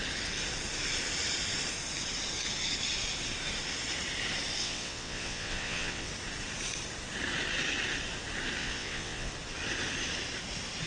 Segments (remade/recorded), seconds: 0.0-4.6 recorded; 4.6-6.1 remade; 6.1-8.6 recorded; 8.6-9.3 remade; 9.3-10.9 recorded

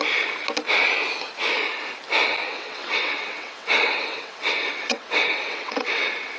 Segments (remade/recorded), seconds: 0.0-2.4 recorded; 2.4-6.4 remade

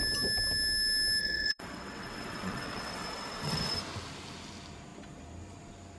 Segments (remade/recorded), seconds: 0.0-1.2 recorded; 1.2-3.8 remade; 3.8-6.0 recorded

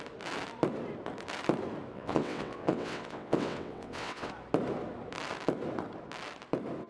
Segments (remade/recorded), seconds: 0.0-1.9 recorded; 1.9-4.3 remade; 4.3-6.9 recorded

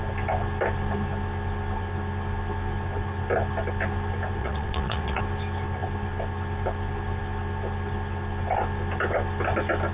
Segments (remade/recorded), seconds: 0.0-4.4 recorded; 4.4-5.2 remade; 5.2-9.9 recorded

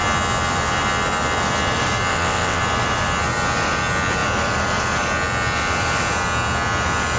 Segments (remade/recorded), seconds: 0.0-2.1 recorded; 2.1-2.6 remade; 2.6-7.2 recorded

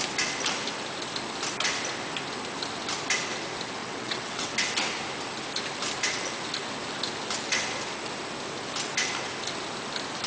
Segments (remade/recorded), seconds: 0.0-3.8 recorded; 3.8-4.5 remade; 4.5-10.3 recorded